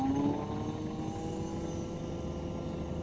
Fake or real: real